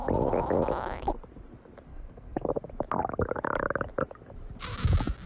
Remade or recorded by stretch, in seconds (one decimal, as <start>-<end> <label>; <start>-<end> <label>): 0.0-1.9 recorded; 1.9-2.5 remade; 2.5-5.3 recorded